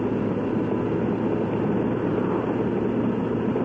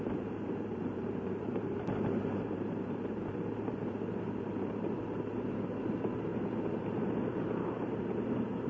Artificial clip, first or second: second